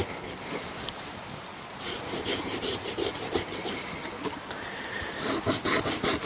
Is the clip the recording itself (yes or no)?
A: no